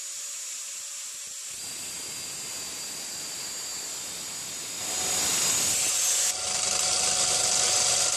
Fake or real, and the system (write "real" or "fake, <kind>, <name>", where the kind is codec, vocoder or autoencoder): real